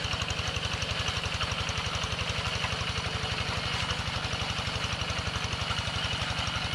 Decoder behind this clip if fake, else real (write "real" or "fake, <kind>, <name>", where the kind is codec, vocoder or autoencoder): real